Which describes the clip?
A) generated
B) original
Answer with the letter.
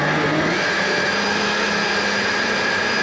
B